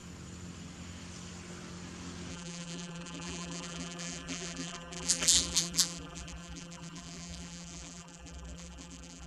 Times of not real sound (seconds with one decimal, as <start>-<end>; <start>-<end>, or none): 2.3-9.3